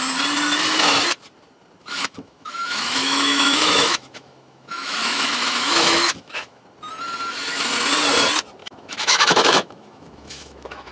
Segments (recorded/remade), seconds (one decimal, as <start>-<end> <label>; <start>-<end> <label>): 0.0-1.8 recorded; 1.8-6.6 remade; 6.6-8.6 recorded; 8.6-10.9 remade